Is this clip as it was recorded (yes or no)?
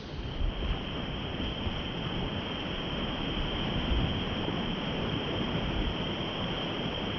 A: yes